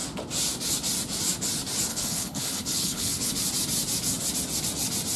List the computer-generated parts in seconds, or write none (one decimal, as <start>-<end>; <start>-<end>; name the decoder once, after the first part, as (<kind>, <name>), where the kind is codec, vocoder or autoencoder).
1.9-3.3 (codec, HILCodec)